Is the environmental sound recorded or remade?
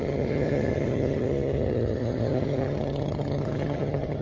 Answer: remade